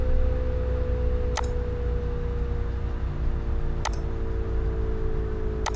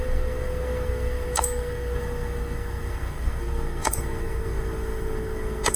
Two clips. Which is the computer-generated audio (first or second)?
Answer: second